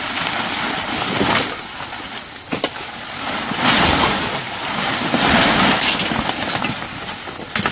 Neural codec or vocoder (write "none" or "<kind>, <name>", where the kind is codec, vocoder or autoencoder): none